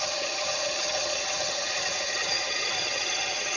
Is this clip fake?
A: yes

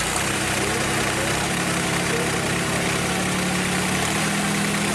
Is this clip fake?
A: no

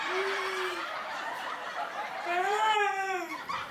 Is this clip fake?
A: yes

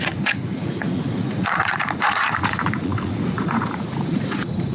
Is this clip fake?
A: yes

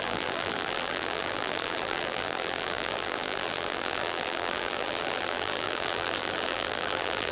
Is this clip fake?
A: yes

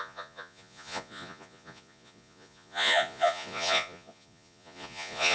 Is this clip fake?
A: yes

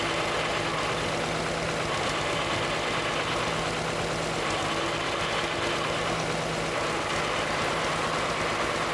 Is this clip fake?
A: no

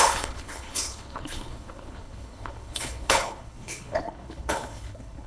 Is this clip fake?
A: yes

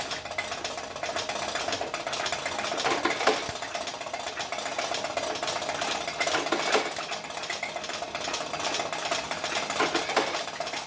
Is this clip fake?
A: no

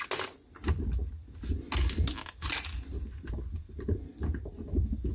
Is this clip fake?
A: no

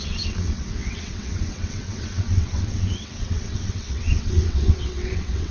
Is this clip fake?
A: yes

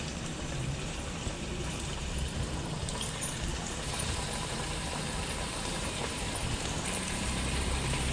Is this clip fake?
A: yes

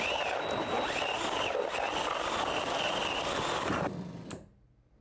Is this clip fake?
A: no